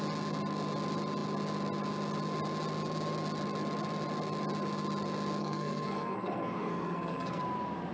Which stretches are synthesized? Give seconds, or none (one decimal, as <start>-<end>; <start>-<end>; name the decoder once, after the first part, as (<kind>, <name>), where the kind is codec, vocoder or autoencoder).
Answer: 5.4-7.4 (codec, SNAC)